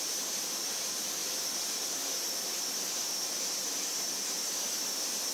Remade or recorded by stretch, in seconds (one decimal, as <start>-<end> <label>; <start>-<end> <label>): 0.0-1.2 recorded; 1.2-1.7 remade; 1.7-5.3 recorded